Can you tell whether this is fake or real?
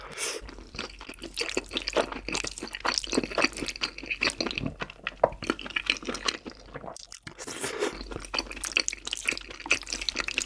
real